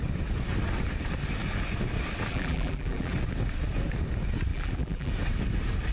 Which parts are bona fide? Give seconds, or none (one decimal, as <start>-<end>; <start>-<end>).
0.0-2.3; 3.1-4.5; 5.1-5.9